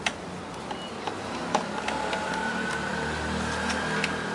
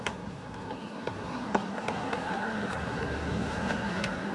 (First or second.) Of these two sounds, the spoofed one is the second